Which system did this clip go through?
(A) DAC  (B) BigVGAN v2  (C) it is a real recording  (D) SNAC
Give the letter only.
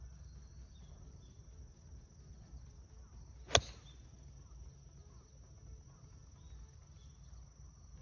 C